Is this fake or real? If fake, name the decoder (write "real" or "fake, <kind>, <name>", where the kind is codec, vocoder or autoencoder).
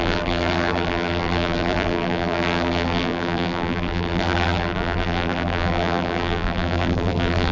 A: fake, vocoder, BigVGAN v2